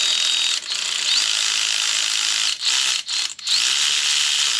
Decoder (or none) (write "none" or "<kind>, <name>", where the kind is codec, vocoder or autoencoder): none